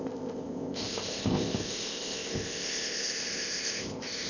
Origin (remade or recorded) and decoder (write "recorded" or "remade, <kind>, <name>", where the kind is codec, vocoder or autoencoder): remade, codec, ZipCodec